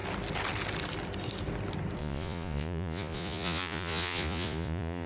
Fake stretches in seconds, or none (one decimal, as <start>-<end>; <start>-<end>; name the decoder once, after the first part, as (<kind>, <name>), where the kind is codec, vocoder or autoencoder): 2.0-5.1 (vocoder, Vocos)